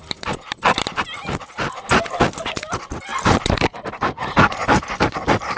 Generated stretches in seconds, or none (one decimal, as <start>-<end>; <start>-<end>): 0.0-1.2; 3.1-3.8